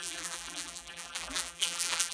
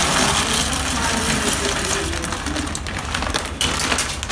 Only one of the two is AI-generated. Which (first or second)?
first